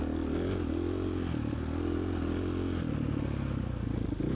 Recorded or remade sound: recorded